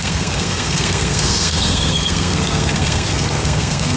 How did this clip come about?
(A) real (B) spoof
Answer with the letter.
B